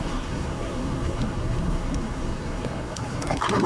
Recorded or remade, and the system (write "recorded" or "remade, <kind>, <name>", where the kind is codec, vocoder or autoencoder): remade, codec, SNAC